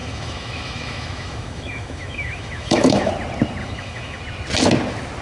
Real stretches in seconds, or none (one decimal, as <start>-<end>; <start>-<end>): 3.1-3.6; 4.2-5.2